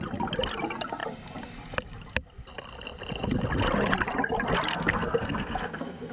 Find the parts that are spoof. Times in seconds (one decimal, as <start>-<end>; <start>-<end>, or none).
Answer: 4.7-6.1